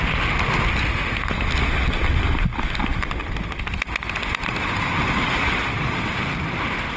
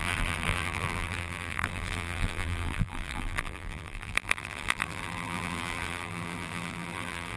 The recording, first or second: first